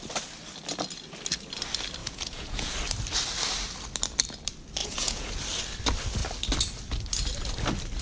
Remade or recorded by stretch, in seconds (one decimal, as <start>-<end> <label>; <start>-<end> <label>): 0.0-2.0 recorded; 2.0-2.7 remade; 2.7-4.8 recorded; 4.8-5.3 remade; 5.3-8.0 recorded